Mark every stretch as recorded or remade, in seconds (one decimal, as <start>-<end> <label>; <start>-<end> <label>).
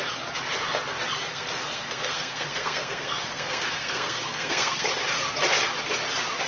0.0-1.3 recorded; 1.3-4.9 remade; 4.9-6.5 recorded